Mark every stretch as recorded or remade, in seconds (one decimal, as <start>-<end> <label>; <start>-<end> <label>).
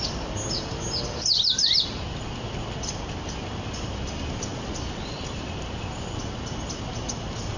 0.0-7.6 recorded